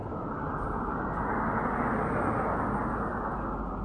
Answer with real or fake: real